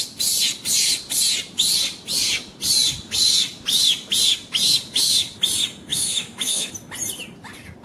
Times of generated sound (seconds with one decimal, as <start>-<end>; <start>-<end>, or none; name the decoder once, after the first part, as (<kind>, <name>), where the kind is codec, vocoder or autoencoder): 5.9-6.7 (autoencoder, DAC-VAE)